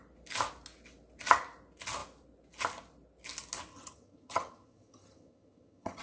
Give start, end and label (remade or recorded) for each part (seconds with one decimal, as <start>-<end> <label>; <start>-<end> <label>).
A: 0.0-3.7 recorded; 3.7-6.0 remade

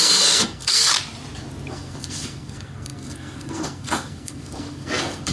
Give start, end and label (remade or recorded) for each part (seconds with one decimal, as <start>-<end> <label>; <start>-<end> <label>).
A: 0.0-0.9 remade; 0.9-1.7 recorded; 1.7-5.3 remade

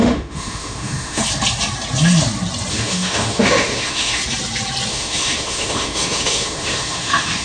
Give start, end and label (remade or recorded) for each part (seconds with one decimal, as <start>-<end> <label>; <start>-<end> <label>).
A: 0.0-1.2 remade; 1.2-2.7 recorded; 2.7-4.2 remade; 4.2-4.9 recorded; 4.9-7.4 remade

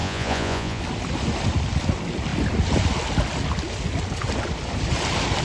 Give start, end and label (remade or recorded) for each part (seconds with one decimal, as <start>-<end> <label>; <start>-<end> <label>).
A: 0.0-0.8 remade; 0.8-5.4 recorded

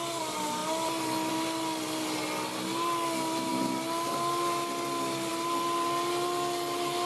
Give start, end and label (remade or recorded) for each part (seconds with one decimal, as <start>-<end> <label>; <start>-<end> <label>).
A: 0.0-7.0 recorded

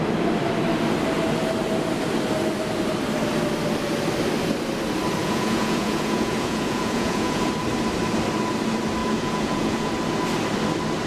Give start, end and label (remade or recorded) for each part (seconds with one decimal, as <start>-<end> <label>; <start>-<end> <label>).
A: 0.0-5.2 recorded; 5.2-7.5 remade; 7.5-9.0 recorded; 9.0-9.9 remade; 9.9-11.1 recorded

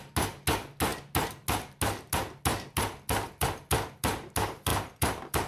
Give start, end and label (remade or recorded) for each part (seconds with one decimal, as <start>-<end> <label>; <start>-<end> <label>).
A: 0.0-5.5 recorded